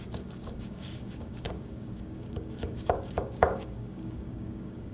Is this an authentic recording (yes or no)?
no